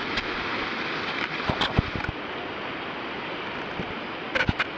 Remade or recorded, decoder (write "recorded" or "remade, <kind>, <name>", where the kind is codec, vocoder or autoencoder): recorded